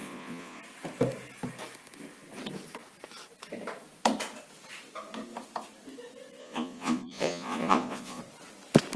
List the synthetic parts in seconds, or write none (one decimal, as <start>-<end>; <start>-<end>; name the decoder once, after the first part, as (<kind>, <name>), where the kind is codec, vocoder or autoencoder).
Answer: 0.0-0.6 (vocoder, Vocos); 6.4-8.2